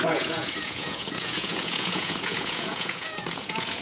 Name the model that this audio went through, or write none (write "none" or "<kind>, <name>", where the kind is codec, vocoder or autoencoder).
vocoder, Vocos